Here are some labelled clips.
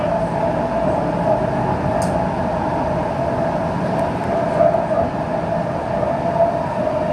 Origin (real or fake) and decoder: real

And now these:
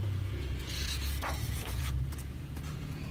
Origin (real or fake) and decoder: fake, vocoder, Vocos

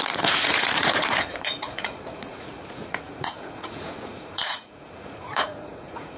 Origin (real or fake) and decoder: fake, vocoder, Vocos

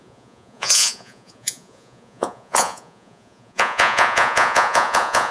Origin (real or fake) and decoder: fake, vocoder, Vocos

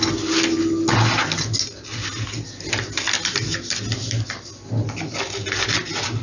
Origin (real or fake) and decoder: real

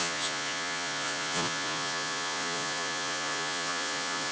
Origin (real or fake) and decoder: fake, vocoder, Vocos